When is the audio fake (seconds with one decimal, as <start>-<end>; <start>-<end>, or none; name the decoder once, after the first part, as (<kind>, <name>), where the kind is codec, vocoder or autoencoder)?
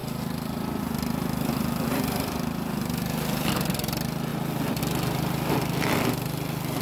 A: 0.0-3.5 (vocoder, BigVGAN v2); 4.3-4.8